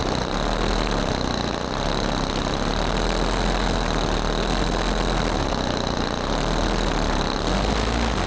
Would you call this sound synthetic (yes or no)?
no